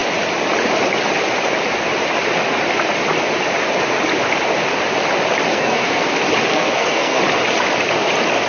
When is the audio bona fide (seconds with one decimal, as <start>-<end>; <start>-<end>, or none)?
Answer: 0.0-5.5; 6.1-6.5; 7.2-8.5

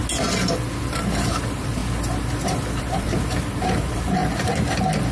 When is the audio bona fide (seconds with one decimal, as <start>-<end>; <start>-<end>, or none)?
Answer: 0.0-0.8; 1.8-2.8; 4.2-5.1